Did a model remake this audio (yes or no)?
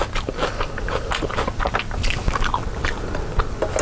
no